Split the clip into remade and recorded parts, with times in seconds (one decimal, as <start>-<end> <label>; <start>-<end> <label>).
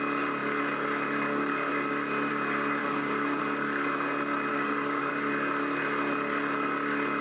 0.0-2.8 recorded; 2.8-3.4 remade; 3.4-4.5 recorded; 4.5-5.1 remade; 5.1-7.2 recorded